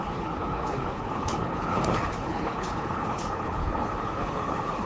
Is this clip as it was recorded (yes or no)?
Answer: no